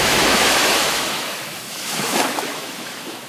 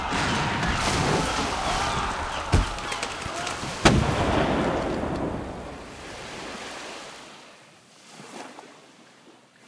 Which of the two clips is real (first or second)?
second